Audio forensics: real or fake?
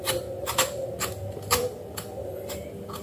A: real